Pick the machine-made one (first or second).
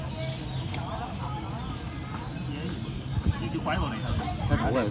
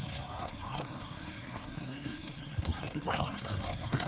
second